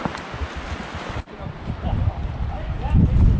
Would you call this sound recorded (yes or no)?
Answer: yes